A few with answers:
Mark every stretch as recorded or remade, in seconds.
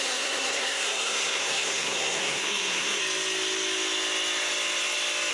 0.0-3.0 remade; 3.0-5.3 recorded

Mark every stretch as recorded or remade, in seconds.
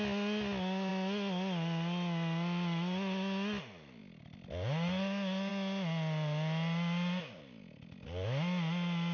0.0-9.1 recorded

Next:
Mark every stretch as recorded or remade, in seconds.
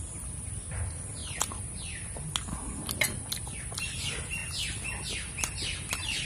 0.0-6.3 recorded